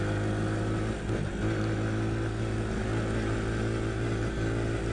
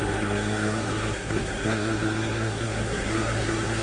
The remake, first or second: second